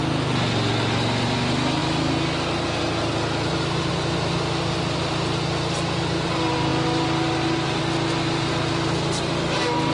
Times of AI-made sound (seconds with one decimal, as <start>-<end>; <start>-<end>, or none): none